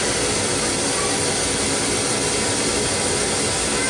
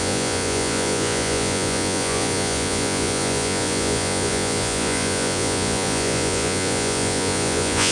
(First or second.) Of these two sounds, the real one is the first